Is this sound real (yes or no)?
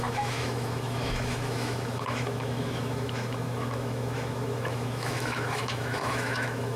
no